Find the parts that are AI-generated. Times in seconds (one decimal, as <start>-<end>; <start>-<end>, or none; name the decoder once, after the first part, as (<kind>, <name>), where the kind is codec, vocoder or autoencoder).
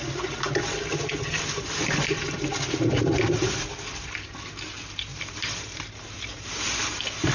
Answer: 5.1-6.5 (vocoder, BigVGAN v2)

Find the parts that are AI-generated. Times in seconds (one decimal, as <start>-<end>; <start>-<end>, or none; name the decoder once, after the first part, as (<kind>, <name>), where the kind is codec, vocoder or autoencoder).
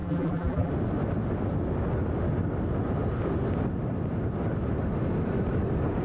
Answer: 0.0-0.7 (vocoder, BigVGAN v2)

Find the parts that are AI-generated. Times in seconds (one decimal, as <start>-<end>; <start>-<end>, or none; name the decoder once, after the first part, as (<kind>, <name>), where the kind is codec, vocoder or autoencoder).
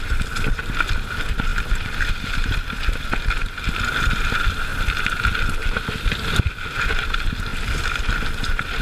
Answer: 1.5-2.1 (vocoder, BigVGAN v2); 4.7-5.2; 7.5-8.8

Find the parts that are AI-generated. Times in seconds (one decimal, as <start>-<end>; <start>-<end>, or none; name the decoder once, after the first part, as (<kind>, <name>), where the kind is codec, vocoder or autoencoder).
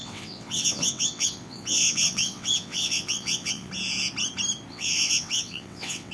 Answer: 0.0-3.7 (vocoder, WaveNeXt); 4.7-6.1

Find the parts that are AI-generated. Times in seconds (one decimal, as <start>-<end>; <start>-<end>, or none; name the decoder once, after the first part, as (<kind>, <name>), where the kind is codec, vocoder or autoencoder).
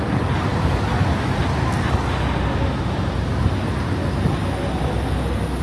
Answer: none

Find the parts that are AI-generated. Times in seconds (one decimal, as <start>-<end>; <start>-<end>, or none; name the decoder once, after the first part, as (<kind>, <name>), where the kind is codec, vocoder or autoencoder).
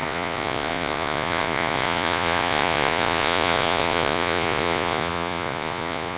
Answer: 0.0-6.2 (vocoder, Vocos)